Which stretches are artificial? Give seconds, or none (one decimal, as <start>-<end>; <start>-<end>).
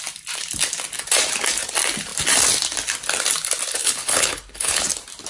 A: 3.8-4.8